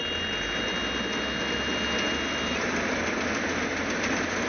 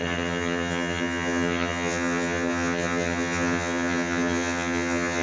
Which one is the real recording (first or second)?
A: first